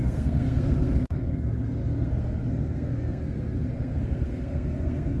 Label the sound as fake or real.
fake